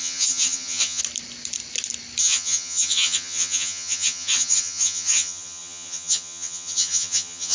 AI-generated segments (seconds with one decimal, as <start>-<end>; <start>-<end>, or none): 0.0-1.0; 2.2-7.5